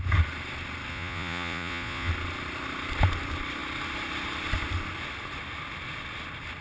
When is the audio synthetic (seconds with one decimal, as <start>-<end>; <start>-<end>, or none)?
0.9-2.1